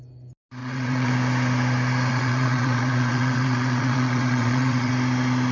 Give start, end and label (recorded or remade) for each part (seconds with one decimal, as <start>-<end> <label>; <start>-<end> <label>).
0.0-0.6 recorded; 0.6-1.1 remade; 1.1-2.1 recorded; 2.1-4.9 remade; 4.9-5.5 recorded